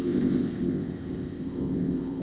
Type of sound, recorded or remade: remade